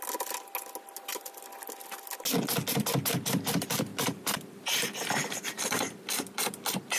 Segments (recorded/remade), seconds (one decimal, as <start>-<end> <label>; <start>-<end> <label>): 0.0-3.9 recorded; 3.9-6.0 remade; 6.0-7.0 recorded